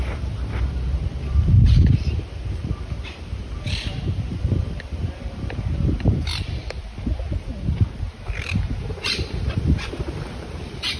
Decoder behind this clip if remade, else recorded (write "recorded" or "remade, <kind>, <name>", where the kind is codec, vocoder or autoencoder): remade, vocoder, BigVGAN v2